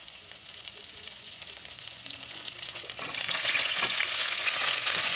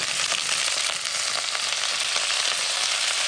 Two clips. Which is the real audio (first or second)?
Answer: second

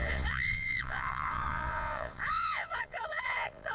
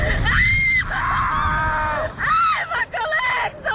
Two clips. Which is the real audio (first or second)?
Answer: second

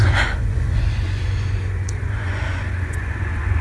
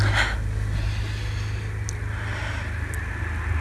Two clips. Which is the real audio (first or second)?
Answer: second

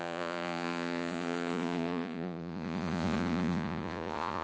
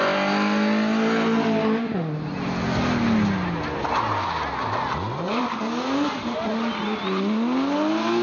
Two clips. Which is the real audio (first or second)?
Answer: second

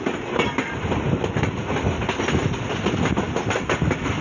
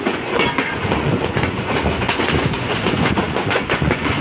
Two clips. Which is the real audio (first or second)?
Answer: first